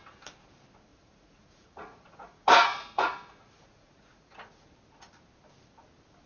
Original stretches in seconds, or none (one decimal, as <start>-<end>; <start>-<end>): 0.0-0.9; 4.7-6.3